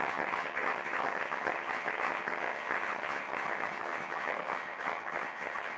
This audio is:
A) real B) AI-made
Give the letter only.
B